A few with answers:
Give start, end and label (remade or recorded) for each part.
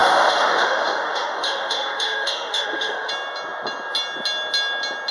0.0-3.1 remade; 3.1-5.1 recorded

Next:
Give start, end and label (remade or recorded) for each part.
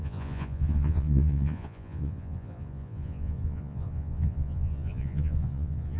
0.0-6.0 remade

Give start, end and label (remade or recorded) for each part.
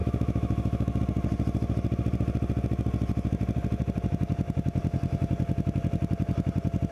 0.0-1.0 remade; 1.0-6.9 recorded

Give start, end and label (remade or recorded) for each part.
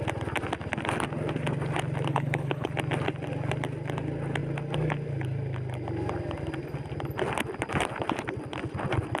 0.0-2.1 recorded; 2.1-2.7 remade; 2.7-9.2 recorded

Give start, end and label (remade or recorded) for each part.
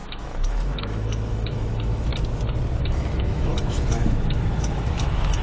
0.0-2.1 remade; 2.1-2.8 recorded; 2.8-5.4 remade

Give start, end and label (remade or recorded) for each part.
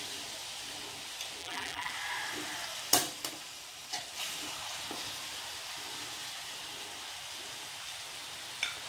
0.0-1.4 recorded; 1.4-1.9 remade; 1.9-8.9 recorded